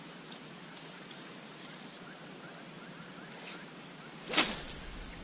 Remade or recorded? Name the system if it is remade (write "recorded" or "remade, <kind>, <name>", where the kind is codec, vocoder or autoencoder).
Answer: recorded